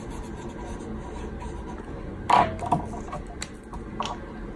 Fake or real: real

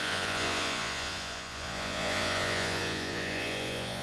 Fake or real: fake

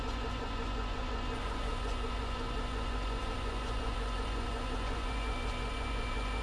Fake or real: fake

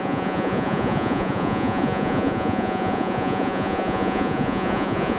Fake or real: fake